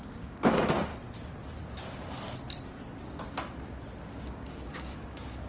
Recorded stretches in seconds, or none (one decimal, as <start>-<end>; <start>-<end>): 0.9-4.2